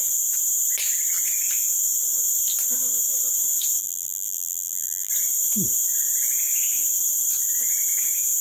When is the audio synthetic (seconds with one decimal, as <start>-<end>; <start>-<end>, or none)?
3.8-5.1